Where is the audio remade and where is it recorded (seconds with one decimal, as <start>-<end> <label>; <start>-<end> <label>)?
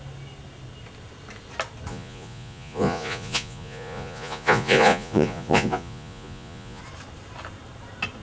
0.0-1.9 recorded; 1.9-6.8 remade; 6.8-8.2 recorded